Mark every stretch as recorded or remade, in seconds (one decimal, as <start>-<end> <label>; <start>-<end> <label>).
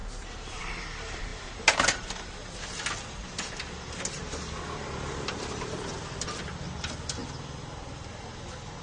0.0-8.8 recorded